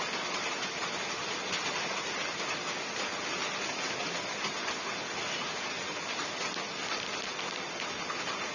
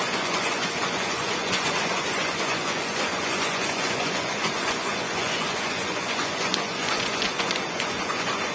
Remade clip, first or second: second